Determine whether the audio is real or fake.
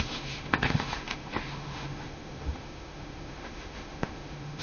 fake